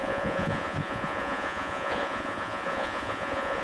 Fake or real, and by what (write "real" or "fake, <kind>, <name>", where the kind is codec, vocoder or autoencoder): fake, vocoder, Vocos